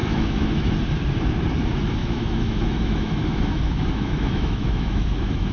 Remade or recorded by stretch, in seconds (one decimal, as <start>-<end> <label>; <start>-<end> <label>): 0.0-0.7 remade; 0.7-2.0 recorded; 2.0-5.5 remade